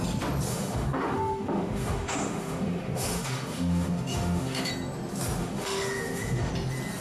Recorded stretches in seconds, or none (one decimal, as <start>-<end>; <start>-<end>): 0.0-0.5; 4.7-5.4; 6.5-7.0